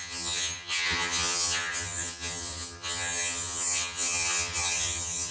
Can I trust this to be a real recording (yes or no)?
no